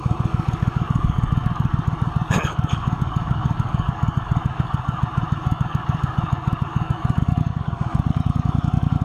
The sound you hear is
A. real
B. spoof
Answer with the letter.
B